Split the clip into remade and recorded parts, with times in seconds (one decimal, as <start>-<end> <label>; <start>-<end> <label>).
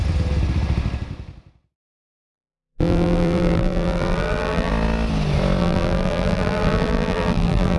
0.0-2.0 recorded; 2.0-4.7 remade; 4.7-5.6 recorded; 5.6-7.8 remade